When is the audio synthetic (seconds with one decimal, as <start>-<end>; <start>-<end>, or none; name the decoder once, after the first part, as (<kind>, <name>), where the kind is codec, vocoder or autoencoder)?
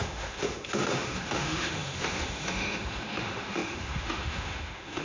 0.0-5.0 (autoencoder, DAC-VAE)